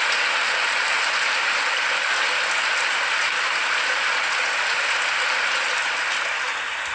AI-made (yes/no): no